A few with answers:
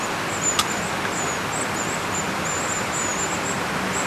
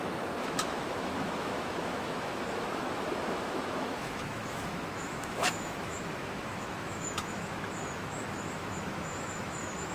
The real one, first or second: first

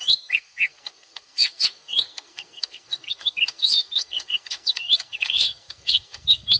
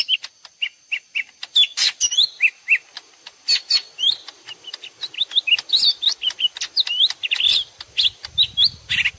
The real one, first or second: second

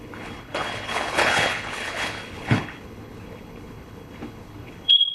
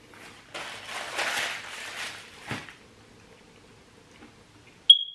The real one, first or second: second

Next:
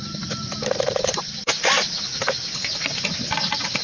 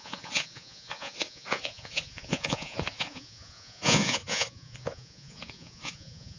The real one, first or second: first